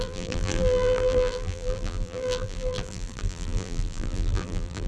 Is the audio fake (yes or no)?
yes